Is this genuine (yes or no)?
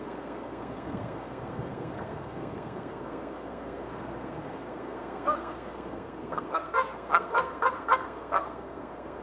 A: no